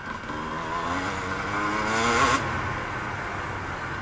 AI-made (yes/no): no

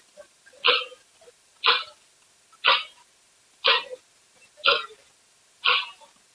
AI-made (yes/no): no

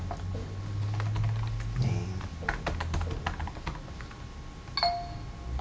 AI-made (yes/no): no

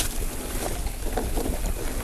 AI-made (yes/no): no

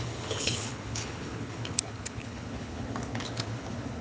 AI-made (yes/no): yes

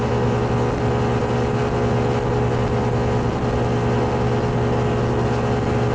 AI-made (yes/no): no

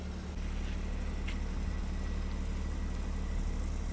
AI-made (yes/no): no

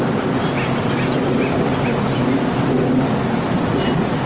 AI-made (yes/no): no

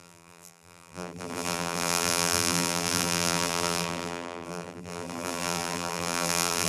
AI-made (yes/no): yes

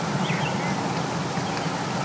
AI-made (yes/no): no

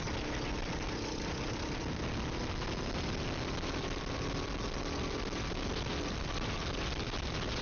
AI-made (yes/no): no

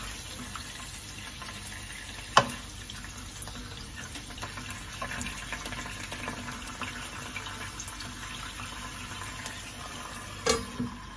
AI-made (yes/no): no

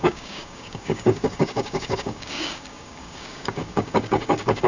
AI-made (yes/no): yes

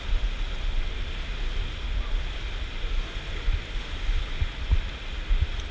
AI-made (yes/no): no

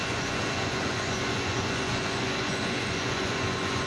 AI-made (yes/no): yes